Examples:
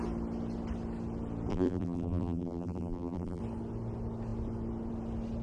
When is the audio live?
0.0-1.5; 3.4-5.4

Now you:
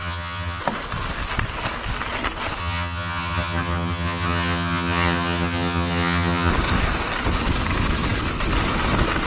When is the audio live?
0.6-2.6; 6.5-9.3

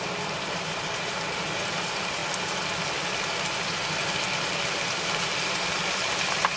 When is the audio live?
2.2-6.6